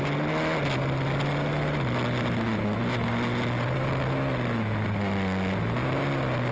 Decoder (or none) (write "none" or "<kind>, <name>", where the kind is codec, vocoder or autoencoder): none